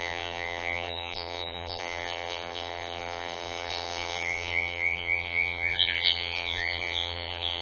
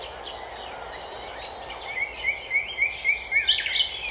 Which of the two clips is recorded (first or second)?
second